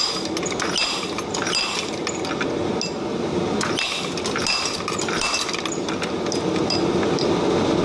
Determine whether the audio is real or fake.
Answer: real